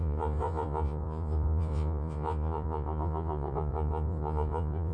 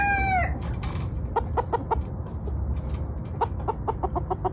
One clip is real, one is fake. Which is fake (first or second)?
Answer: first